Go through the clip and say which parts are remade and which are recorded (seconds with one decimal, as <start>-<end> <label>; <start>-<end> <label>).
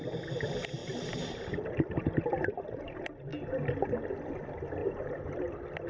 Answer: 0.0-0.8 recorded; 0.8-2.6 remade; 2.6-4.8 recorded; 4.8-5.4 remade; 5.4-5.9 recorded